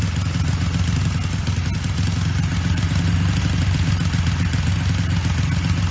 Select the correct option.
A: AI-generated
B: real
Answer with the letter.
B